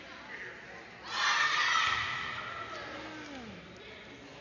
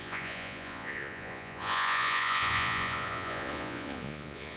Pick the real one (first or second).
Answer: first